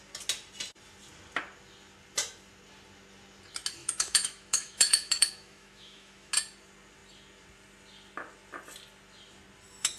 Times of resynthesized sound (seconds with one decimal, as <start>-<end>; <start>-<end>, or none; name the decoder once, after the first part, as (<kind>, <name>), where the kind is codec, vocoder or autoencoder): 3.8-6.3 (autoencoder, DAC-VAE)